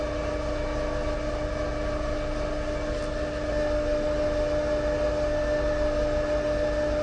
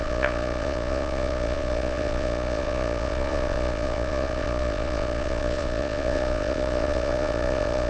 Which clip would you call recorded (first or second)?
first